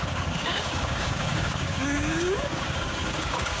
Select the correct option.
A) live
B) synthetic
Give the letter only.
B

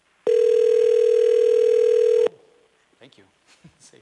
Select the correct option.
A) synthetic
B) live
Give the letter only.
B